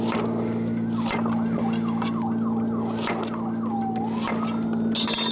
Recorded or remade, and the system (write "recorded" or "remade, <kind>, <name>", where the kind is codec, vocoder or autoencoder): recorded